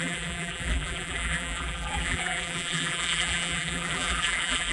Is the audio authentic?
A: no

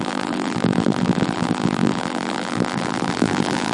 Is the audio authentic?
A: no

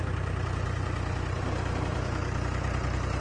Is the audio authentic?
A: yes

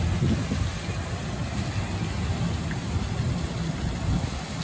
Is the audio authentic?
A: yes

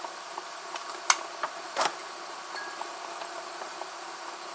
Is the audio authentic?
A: yes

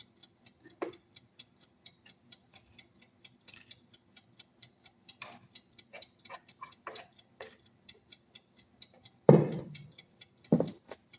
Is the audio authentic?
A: no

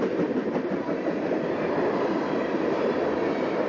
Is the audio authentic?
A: no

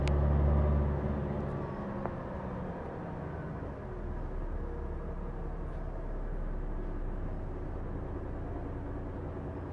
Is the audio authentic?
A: yes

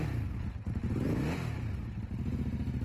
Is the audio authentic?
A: yes